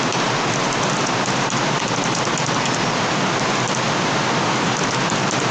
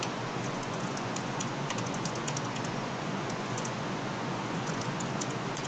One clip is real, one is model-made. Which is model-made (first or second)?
second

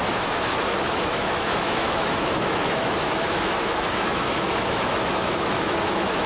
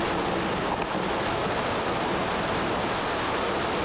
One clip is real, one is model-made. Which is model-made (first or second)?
first